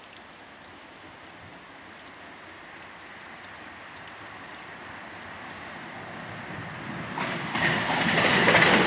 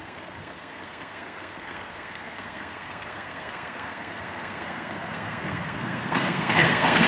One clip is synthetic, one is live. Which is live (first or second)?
first